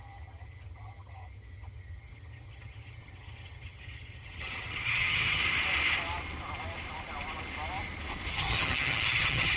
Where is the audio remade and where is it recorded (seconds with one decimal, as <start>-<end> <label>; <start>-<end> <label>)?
0.0-5.4 remade; 5.4-8.3 recorded; 8.3-9.6 remade